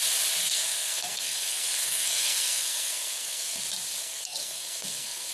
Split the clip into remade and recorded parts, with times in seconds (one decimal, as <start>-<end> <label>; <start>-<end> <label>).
0.0-0.4 recorded; 0.4-3.6 remade; 3.6-4.0 recorded; 4.0-5.3 remade